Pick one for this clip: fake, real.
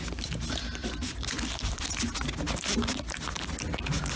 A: real